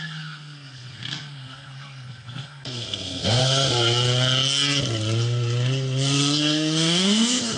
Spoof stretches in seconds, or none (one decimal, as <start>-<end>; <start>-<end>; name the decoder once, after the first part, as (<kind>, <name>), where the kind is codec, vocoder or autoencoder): 0.0-3.4 (codec, SNAC); 6.4-7.6